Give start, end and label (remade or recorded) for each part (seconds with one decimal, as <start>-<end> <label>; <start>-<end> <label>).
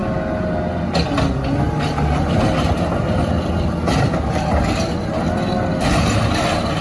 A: 0.0-6.8 recorded